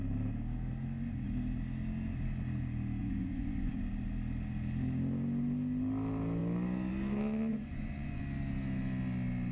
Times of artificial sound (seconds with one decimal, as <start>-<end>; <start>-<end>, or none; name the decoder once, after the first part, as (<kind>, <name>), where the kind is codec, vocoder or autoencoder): 3.0-3.8 (vocoder, Vocos); 7.5-8.2